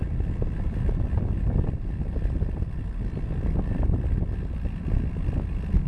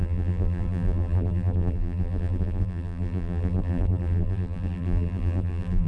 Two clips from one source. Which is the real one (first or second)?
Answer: first